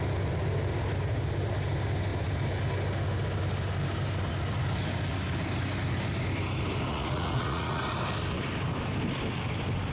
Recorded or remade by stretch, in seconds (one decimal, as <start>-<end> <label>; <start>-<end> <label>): 0.0-6.9 recorded; 6.9-7.8 remade; 7.8-9.9 recorded